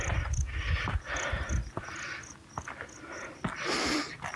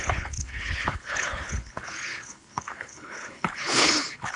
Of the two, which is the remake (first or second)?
second